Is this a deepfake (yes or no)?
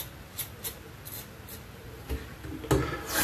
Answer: no